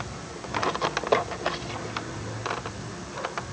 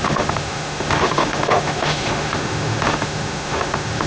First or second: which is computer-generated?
second